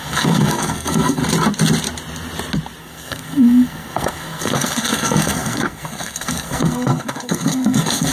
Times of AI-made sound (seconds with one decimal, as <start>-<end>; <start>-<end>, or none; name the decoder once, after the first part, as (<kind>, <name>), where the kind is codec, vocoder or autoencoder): 0.0-1.2 (codec, SNAC); 2.8-8.1